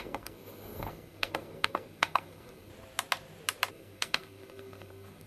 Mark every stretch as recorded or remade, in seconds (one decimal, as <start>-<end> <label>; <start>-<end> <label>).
0.0-2.7 remade; 2.7-3.7 recorded; 3.7-5.3 remade